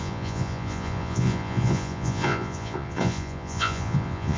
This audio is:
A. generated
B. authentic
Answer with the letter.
A